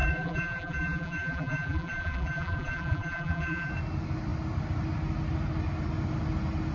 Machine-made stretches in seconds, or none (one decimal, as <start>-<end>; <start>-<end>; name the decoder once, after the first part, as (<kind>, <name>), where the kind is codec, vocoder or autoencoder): 0.0-3.7 (vocoder, BigVGAN v2)